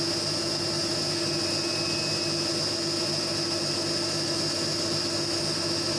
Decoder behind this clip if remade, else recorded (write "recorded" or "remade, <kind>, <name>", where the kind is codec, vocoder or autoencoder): recorded